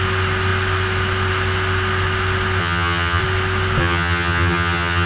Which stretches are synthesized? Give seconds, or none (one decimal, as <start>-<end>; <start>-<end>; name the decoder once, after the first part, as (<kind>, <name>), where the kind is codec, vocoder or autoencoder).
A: 2.6-3.2 (vocoder, HiFi-GAN); 3.8-5.1